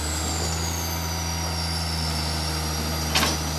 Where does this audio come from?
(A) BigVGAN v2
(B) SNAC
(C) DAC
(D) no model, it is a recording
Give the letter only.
D